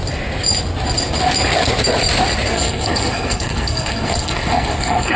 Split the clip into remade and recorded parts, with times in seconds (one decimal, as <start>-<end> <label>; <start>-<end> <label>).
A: 0.0-2.5 recorded; 2.5-5.2 remade